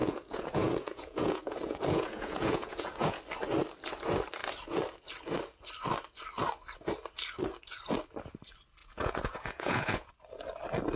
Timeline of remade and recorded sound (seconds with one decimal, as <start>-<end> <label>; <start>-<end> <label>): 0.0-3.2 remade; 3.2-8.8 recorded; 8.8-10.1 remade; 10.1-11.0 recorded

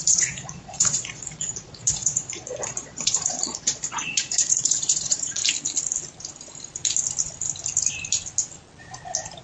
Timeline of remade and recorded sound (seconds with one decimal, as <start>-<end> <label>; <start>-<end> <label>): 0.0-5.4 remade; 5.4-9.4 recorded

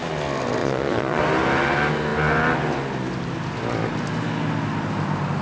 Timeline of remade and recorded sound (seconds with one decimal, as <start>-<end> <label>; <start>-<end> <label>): 0.0-0.6 recorded; 0.6-1.2 remade; 1.2-5.4 recorded

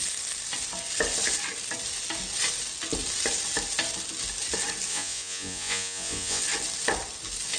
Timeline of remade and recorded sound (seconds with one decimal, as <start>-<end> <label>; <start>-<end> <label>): 0.0-4.9 recorded; 4.9-6.4 remade; 6.4-7.6 recorded

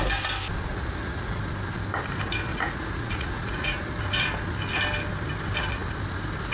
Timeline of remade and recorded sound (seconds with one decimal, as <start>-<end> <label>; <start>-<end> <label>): 0.0-0.7 recorded; 0.7-1.4 remade; 1.4-2.5 recorded; 2.5-3.8 remade; 3.8-6.5 recorded

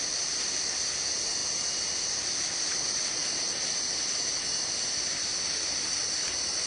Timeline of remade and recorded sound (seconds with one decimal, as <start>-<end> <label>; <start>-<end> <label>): 0.0-6.7 recorded

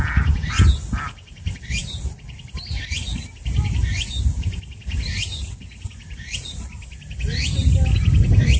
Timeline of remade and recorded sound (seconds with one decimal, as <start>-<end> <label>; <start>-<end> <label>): 0.0-8.6 recorded

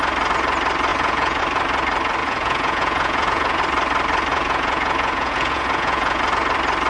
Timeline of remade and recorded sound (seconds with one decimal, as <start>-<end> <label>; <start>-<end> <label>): 0.0-0.9 recorded; 0.9-1.4 remade; 1.4-2.2 recorded; 2.2-3.6 remade; 3.6-4.3 recorded; 4.3-6.2 remade; 6.2-6.9 recorded